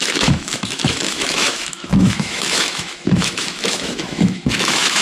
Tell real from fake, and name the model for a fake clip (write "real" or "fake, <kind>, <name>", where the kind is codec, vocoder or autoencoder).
fake, autoencoder, DAC-VAE